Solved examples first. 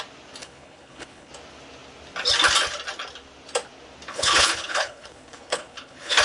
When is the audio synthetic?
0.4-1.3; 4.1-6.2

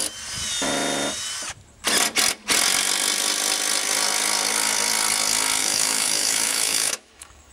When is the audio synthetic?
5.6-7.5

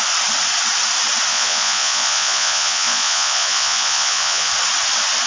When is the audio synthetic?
1.3-4.5

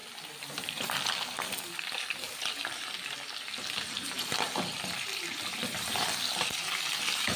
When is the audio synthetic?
none

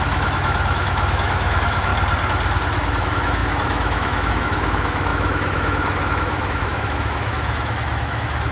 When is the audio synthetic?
0.0-1.9; 3.0-8.5

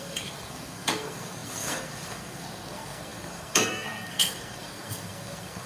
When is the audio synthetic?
0.0-5.7

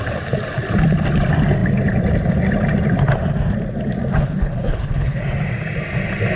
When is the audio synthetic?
4.1-5.2

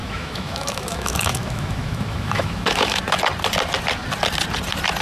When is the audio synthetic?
0.0-3.0